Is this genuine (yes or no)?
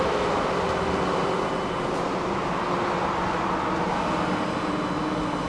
yes